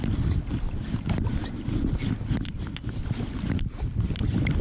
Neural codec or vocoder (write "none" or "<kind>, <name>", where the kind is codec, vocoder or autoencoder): none